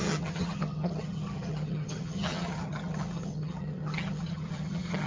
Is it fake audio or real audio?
fake